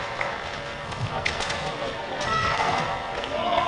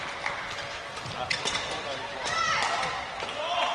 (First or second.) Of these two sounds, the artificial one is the first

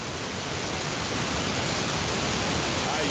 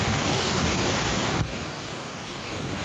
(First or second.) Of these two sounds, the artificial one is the second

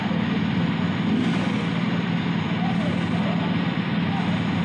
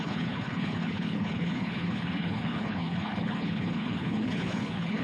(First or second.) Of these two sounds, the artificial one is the second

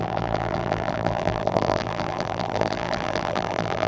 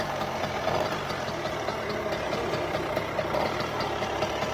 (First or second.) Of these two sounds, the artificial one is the first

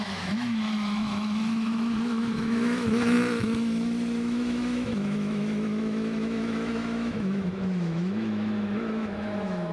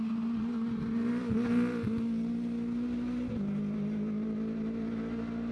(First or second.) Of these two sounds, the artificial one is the first